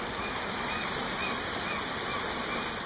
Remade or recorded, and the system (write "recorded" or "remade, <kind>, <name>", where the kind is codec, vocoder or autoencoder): recorded